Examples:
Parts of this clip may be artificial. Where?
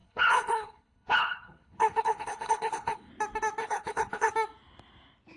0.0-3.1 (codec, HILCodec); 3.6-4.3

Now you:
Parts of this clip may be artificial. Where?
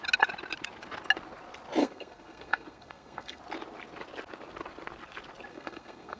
1.8-3.4 (codec, SNAC); 5.5-6.2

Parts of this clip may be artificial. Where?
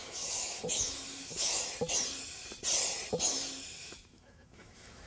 0.0-1.6 (autoencoder, DAC-VAE); 3.8-5.1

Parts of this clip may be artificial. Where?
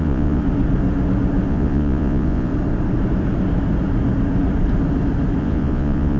0.0-0.4 (vocoder, Vocos); 1.5-2.5; 5.4-6.2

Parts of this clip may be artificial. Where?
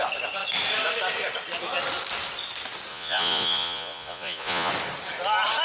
2.9-4.7 (vocoder, Vocos)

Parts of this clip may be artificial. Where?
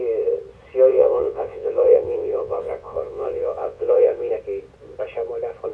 0.9-4.3 (vocoder, WaveNeXt)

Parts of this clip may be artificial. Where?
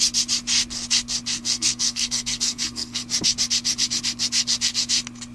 1.4-3.0 (codec, SNAC)